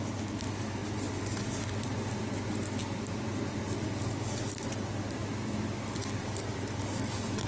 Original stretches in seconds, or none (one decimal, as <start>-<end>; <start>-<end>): 0.0-7.5